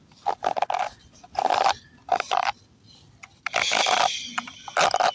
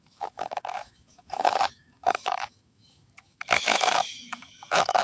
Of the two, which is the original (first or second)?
first